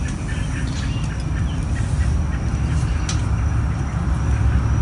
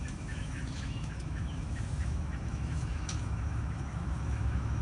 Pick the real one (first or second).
first